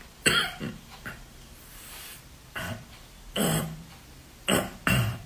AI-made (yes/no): yes